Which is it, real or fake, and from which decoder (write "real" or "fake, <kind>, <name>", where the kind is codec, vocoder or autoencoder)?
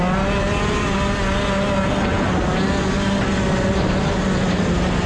real